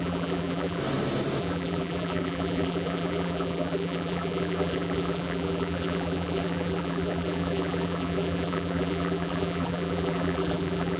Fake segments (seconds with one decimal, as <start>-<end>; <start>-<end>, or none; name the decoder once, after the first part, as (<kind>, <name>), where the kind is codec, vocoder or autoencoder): 0.0-0.8 (vocoder, BigVGAN v2); 1.4-11.0